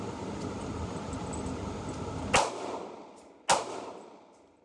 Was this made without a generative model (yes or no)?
yes